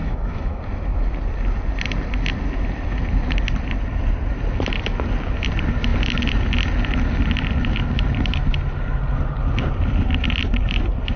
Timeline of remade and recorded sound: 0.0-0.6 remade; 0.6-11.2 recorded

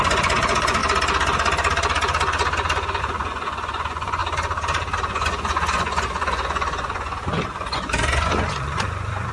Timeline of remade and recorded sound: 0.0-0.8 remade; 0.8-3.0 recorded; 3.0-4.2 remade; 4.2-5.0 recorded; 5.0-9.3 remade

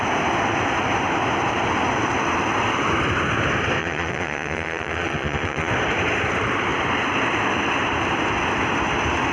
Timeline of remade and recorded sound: 0.0-3.8 recorded; 3.8-5.7 remade; 5.7-9.3 recorded

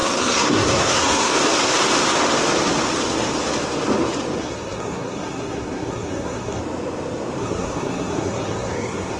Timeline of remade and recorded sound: 0.0-1.3 remade; 1.3-4.4 recorded; 4.4-6.6 remade; 6.6-7.4 recorded; 7.4-9.2 remade

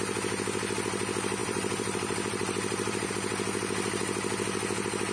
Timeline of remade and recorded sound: 0.0-1.4 recorded; 1.4-3.1 remade; 3.1-5.1 recorded

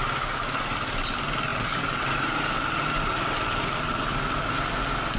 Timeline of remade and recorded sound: 0.0-5.2 recorded

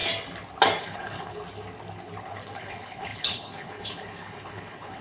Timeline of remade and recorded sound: 0.0-0.8 recorded; 0.8-1.4 remade; 1.4-2.3 recorded; 2.3-5.0 remade